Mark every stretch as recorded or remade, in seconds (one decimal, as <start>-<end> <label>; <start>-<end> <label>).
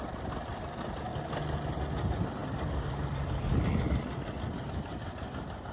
0.0-5.7 recorded